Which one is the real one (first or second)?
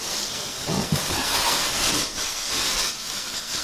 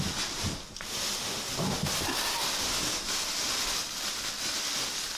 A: second